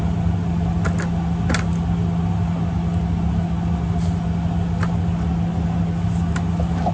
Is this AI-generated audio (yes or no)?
no